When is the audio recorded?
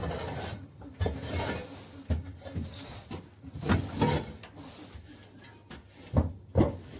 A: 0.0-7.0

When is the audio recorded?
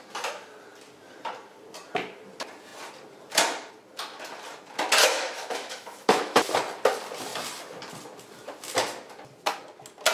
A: 0.0-5.0; 6.4-10.1